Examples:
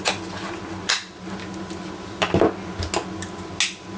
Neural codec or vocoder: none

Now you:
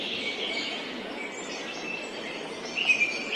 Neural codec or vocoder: none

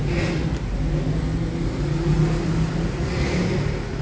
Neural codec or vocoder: none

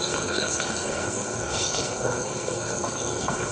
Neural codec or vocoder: codec, SNAC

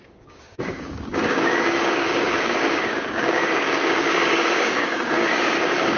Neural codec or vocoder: codec, DAC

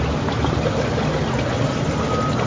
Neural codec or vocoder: none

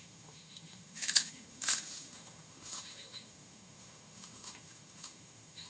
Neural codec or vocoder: autoencoder, DAC-VAE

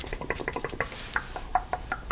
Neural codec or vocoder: vocoder, BigVGAN v2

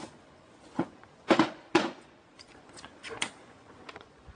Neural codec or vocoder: vocoder, Vocos